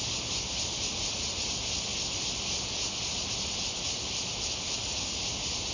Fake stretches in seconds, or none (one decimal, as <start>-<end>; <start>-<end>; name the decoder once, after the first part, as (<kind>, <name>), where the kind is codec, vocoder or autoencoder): none